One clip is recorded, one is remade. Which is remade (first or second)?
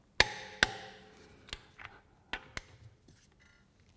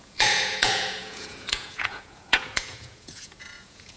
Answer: second